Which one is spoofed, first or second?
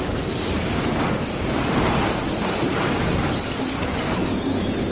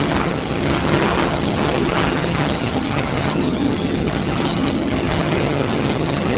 second